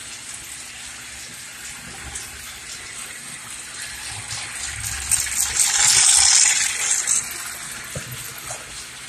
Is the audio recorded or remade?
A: recorded